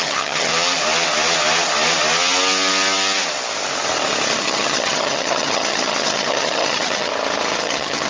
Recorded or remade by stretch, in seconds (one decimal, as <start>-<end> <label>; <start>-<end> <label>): 0.0-0.5 remade; 0.5-4.4 recorded; 4.4-7.1 remade; 7.1-7.6 recorded; 7.6-8.1 remade